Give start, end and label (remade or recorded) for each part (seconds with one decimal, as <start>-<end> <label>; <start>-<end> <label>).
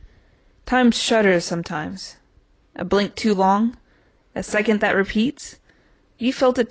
0.0-2.7 recorded; 2.7-3.8 remade; 3.8-4.2 recorded; 4.2-6.7 remade